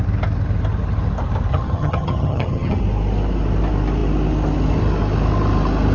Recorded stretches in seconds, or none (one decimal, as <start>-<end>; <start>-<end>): 0.0-1.5; 2.8-5.9